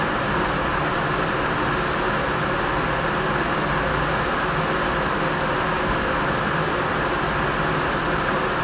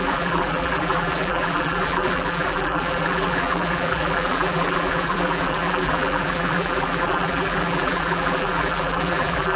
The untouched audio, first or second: first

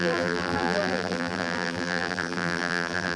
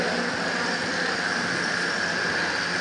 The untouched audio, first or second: second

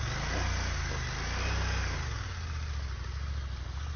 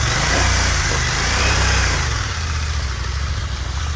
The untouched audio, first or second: first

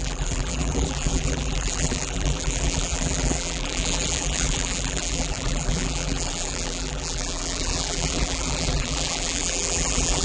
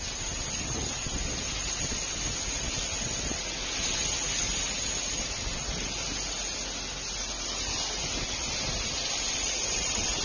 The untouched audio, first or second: second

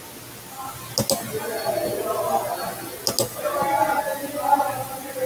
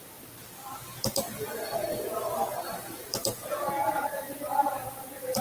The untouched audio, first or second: first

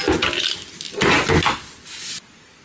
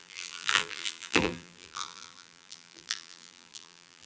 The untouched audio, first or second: first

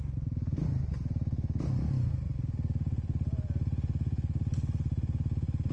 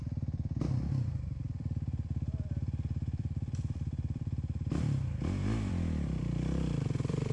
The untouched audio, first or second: first